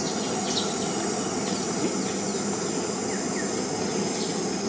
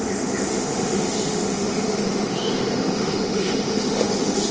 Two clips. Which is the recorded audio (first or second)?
first